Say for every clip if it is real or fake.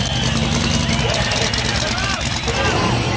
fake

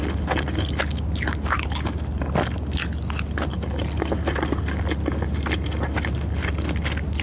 real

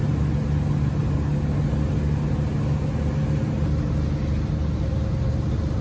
real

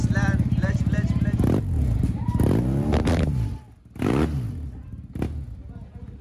real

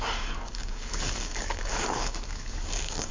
fake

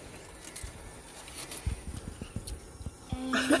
real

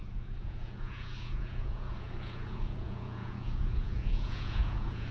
fake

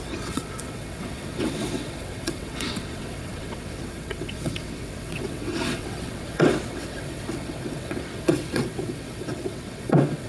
fake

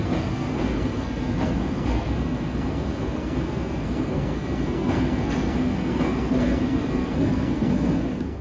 fake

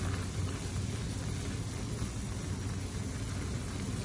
real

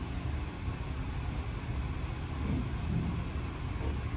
real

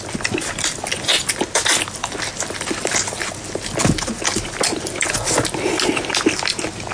real